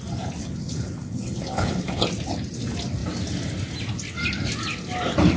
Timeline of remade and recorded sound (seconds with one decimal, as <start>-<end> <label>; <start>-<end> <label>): 0.0-0.4 recorded; 0.4-2.0 remade; 2.0-5.4 recorded